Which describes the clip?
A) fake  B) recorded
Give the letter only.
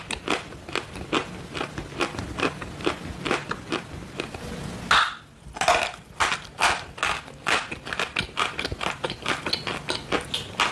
B